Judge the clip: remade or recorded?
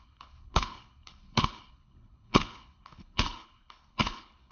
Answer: remade